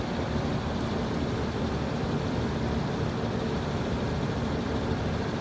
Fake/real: real